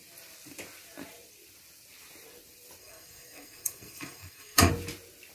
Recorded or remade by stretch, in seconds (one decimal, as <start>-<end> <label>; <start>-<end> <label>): 0.0-2.8 recorded; 2.8-4.7 remade; 4.7-5.3 recorded